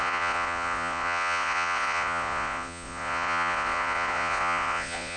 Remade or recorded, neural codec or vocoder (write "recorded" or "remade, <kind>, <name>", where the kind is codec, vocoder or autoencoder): remade, vocoder, Vocos